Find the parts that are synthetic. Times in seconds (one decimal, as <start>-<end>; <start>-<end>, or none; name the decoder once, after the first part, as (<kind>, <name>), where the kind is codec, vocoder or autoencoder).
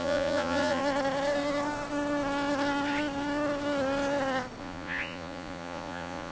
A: 0.0-0.8 (vocoder, Vocos); 4.6-6.3